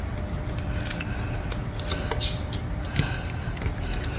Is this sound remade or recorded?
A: recorded